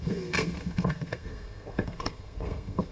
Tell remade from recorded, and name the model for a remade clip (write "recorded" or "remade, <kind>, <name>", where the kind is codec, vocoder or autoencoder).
remade, codec, SNAC